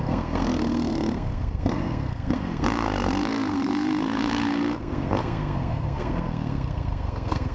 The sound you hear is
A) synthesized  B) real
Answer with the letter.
A